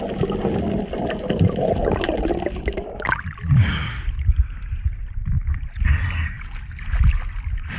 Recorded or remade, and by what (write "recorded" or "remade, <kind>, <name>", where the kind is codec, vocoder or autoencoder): recorded